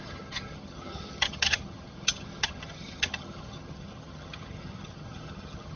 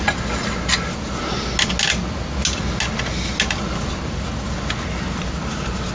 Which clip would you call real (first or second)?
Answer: second